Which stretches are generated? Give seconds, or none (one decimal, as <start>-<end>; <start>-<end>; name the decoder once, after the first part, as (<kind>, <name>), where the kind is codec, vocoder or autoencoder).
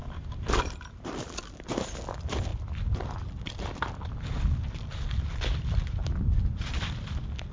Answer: 0.0-2.5 (vocoder, BigVGAN v2); 6.7-7.5